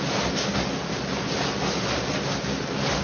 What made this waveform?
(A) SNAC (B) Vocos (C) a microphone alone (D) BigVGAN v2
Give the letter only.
C